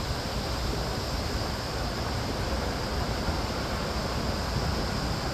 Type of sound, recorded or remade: recorded